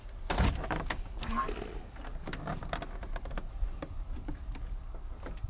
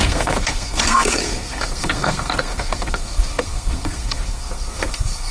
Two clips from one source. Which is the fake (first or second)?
second